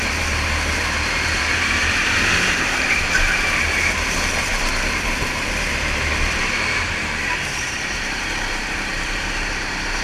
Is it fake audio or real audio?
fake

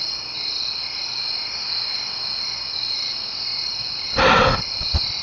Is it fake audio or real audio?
real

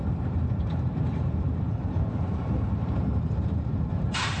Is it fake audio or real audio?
fake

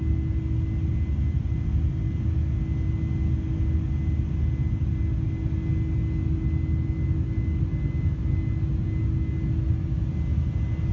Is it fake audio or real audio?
real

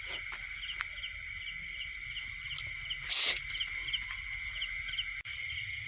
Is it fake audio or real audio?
real